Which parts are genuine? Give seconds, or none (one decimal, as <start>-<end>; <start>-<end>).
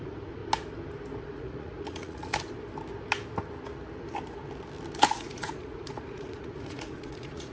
0.4-1.2; 2.3-5.2